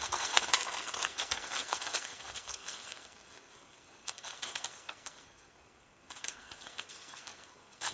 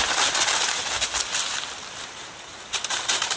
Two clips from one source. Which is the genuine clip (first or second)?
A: second